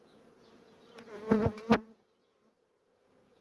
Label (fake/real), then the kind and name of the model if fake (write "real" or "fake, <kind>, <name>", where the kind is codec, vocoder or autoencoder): fake, vocoder, Vocos